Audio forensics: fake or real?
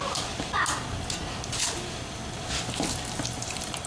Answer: real